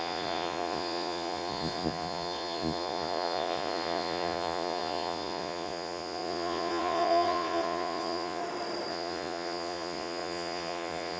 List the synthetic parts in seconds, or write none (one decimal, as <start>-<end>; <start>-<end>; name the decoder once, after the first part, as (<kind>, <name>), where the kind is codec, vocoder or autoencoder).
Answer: 0.0-8.4 (vocoder, Vocos); 8.9-11.2